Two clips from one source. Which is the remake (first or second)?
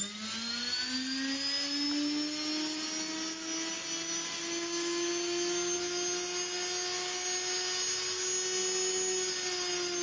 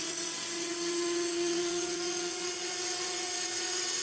second